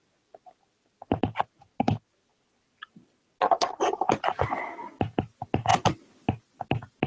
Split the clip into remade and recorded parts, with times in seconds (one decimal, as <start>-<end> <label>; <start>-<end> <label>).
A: 0.0-7.1 recorded